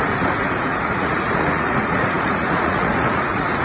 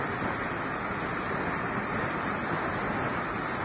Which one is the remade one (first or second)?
first